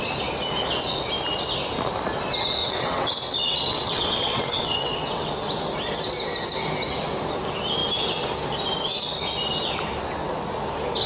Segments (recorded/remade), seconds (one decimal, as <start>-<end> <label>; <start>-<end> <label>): 0.0-2.6 recorded; 2.6-5.3 remade; 5.3-11.1 recorded